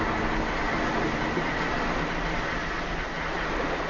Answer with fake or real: real